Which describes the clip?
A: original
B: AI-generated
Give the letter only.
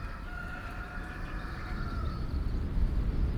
A